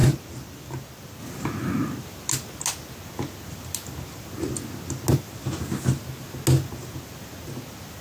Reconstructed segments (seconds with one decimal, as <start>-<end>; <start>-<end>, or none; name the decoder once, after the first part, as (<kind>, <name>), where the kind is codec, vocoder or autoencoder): none